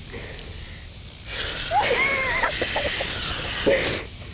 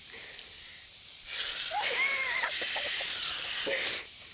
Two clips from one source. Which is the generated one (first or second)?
second